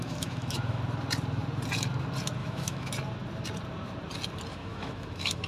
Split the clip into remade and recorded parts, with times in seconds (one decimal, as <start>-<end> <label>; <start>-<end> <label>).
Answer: 0.0-0.8 remade; 0.8-2.4 recorded; 2.4-2.9 remade; 2.9-4.5 recorded; 4.5-5.5 remade